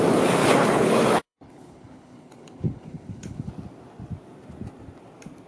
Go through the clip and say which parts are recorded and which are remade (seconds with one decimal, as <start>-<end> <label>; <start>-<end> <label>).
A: 0.0-0.4 recorded; 0.4-3.5 remade; 3.5-5.5 recorded